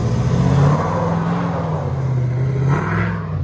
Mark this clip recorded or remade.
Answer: recorded